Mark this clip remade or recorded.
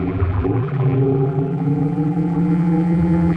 remade